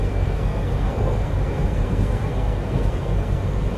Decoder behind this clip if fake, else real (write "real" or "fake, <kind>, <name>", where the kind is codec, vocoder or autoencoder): fake, codec, SNAC